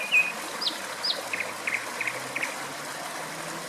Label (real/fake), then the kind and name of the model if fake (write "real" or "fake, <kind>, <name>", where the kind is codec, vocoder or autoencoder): real